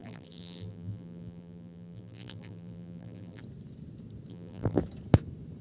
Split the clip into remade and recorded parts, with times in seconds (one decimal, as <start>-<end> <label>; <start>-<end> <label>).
0.0-3.4 remade; 3.4-4.3 recorded; 4.3-4.8 remade; 4.8-5.6 recorded